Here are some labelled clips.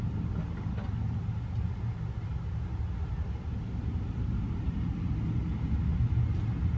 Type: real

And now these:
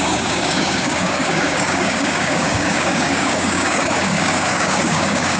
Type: fake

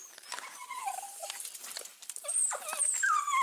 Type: real